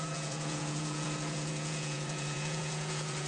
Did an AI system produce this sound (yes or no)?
yes